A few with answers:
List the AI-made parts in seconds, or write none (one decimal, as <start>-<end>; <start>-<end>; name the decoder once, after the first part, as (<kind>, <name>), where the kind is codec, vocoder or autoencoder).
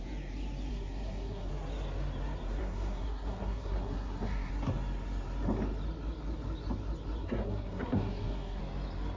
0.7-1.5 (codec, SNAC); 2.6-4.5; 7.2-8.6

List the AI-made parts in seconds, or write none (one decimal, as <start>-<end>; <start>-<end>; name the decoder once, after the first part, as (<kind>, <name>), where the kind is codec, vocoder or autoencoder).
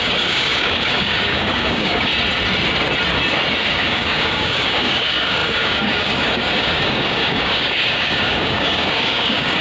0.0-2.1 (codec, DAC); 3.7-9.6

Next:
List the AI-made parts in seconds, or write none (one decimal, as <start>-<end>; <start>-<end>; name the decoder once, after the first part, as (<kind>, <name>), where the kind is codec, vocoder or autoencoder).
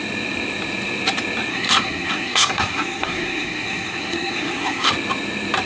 1.5-4.9 (codec, SNAC)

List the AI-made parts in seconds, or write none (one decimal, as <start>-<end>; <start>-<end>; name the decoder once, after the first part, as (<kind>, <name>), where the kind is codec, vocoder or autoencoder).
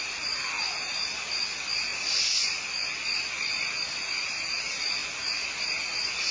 none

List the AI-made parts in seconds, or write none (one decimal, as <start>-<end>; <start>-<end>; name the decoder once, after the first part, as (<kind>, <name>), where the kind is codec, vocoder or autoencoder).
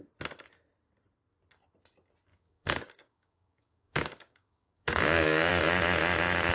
2.3-5.5 (codec, DAC)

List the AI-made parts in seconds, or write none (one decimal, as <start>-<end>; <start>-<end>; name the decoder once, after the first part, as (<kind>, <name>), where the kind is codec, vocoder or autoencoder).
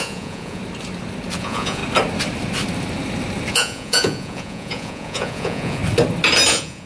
0.0-0.6 (vocoder, Vocos); 1.4-1.8; 3.5-5.8; 6.5-6.9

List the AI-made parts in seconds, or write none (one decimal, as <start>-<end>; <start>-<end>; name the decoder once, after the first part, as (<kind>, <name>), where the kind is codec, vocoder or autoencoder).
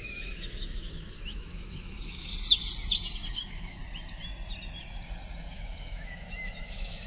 0.0-2.3 (autoencoder, DAC-VAE); 3.3-3.8; 5.5-7.1